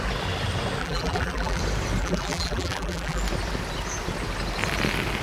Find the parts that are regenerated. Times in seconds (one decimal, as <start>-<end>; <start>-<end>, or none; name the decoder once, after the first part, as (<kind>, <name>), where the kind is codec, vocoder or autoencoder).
0.8-1.6 (vocoder, BigVGAN v2); 2.0-3.2